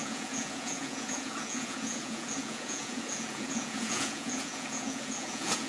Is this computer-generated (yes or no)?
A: yes